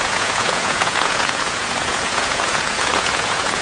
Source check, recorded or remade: remade